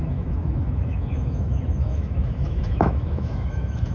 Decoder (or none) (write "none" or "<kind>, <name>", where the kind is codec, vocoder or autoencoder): autoencoder, DAC-VAE